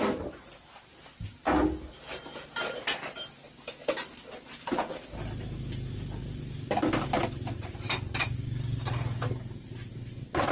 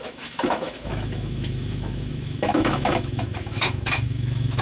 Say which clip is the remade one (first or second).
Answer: second